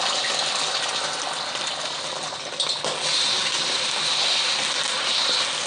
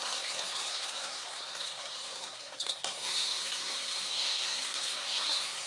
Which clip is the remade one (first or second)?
second